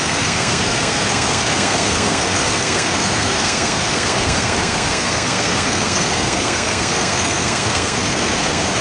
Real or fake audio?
fake